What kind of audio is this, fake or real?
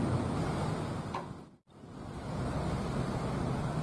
real